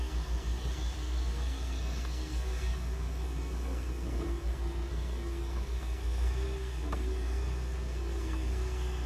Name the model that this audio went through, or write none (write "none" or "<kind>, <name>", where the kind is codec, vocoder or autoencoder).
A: codec, SNAC